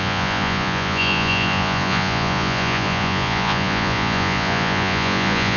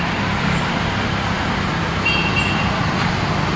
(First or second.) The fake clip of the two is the first